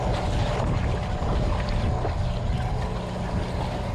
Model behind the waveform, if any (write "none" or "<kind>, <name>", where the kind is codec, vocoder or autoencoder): none